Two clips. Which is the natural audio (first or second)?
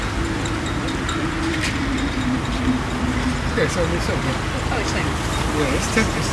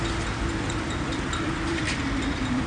first